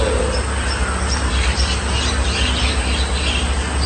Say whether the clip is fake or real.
real